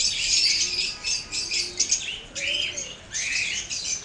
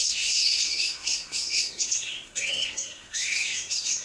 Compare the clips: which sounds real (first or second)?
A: first